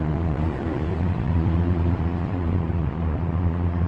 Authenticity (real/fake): fake